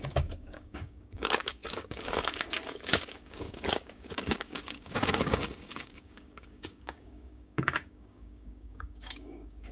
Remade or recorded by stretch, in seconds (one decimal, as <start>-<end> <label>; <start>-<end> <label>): 0.0-9.7 remade